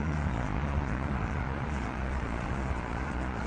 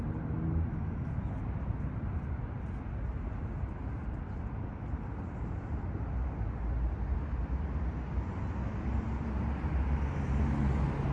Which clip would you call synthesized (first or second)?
first